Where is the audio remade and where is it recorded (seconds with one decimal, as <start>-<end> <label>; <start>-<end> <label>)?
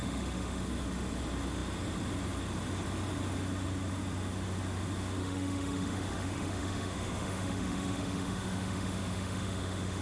0.0-0.6 remade; 0.6-5.2 recorded; 5.2-10.0 remade